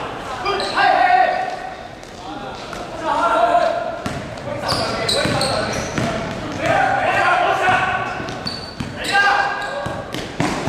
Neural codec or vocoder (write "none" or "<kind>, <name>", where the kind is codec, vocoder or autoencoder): vocoder, BigVGAN v2